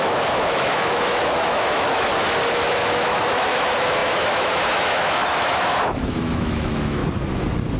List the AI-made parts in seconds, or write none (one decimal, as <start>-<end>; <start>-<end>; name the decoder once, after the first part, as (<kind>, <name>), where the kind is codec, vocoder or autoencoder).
0.0-2.1 (autoencoder, DAC-VAE); 2.7-7.0